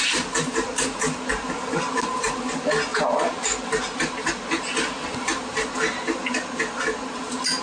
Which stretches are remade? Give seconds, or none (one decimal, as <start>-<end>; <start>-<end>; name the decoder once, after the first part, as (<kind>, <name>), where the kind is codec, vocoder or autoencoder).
none